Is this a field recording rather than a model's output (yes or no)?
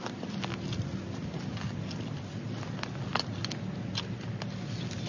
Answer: yes